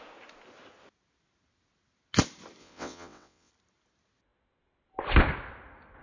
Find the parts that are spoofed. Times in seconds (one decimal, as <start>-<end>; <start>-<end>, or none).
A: 2.6-3.5